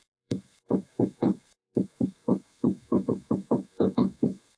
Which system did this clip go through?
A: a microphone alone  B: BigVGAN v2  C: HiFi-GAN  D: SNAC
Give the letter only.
D